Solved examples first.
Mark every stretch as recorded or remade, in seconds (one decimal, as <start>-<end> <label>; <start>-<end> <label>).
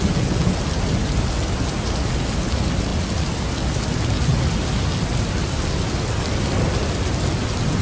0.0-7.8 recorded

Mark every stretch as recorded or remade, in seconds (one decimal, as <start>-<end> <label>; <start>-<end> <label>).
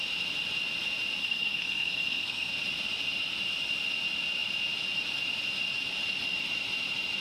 0.0-1.2 recorded; 1.2-2.5 remade; 2.5-7.2 recorded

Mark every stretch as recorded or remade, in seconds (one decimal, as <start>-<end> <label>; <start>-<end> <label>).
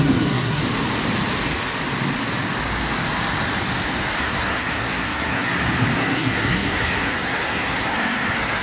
0.0-0.6 remade; 0.6-4.2 recorded; 4.2-5.5 remade; 5.5-6.0 recorded; 6.0-8.6 remade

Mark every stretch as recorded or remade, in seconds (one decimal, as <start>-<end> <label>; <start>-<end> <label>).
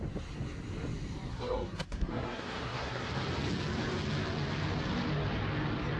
0.0-1.3 recorded; 1.3-3.1 remade; 3.1-6.0 recorded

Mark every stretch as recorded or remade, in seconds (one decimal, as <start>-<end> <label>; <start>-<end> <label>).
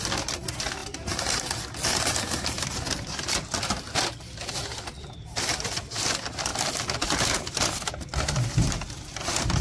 0.0-9.6 recorded